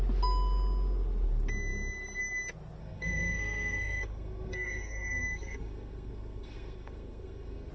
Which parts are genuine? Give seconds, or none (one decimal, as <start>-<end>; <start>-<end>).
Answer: 0.0-2.8